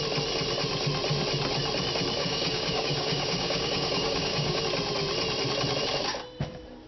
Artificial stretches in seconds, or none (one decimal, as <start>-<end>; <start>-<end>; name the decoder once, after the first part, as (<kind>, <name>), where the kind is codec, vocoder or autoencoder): 2.2-4.6 (codec, DAC)